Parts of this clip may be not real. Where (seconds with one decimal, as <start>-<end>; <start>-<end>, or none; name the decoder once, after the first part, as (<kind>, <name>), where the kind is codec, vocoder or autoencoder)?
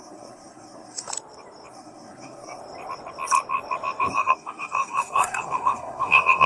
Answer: 0.0-1.1 (codec, SNAC); 1.7-2.6; 4.1-6.5